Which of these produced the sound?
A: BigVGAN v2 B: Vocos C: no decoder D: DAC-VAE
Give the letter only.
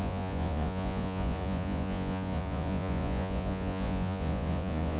B